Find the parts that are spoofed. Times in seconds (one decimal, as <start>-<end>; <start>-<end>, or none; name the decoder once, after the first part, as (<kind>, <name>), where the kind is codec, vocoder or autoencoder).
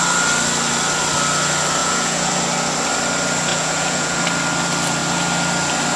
1.8-2.3 (vocoder, Vocos); 3.5-4.2